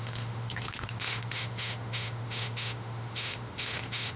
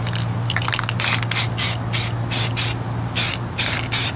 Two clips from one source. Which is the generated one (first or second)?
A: first